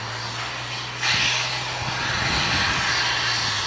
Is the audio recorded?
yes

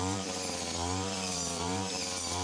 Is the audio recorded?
no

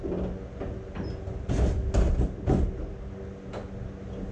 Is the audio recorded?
yes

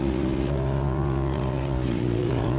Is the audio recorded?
no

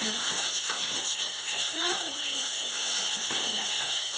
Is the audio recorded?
no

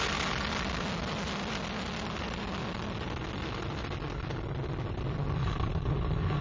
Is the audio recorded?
yes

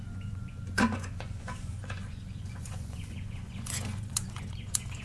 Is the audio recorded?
no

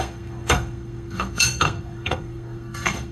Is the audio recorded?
no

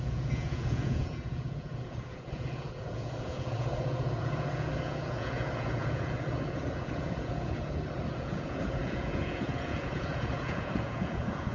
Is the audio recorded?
no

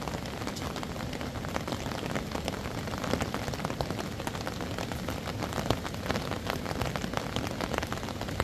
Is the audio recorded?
yes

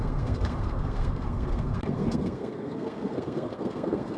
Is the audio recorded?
no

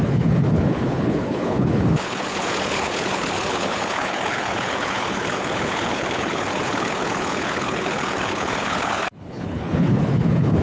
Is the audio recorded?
no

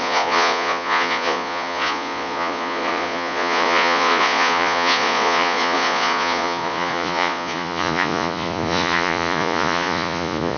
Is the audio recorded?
no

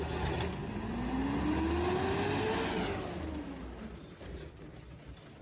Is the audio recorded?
yes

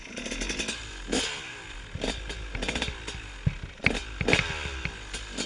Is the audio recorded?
yes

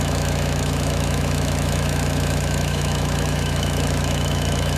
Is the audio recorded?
no